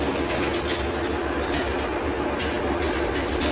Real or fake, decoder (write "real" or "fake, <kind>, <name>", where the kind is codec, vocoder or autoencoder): real